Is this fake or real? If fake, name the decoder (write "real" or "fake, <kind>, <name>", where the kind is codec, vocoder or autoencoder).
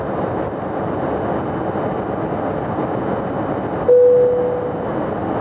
real